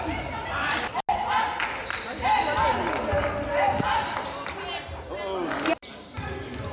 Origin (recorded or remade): recorded